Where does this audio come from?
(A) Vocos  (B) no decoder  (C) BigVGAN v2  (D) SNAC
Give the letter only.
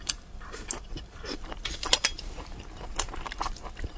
C